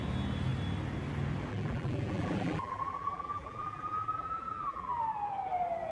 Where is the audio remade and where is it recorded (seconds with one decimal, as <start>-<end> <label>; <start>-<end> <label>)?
0.0-1.5 recorded; 1.5-5.0 remade; 5.0-5.9 recorded